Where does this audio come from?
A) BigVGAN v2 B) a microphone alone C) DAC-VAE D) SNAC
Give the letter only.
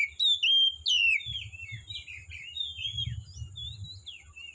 B